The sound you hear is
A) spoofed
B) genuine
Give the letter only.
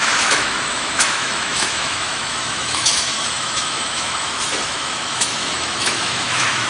A